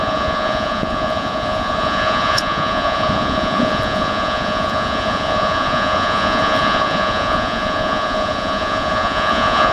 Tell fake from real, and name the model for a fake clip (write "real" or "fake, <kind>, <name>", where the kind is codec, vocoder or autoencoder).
fake, vocoder, Vocos